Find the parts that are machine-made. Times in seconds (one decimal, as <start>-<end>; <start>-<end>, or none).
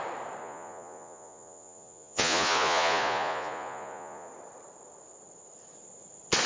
0.4-4.3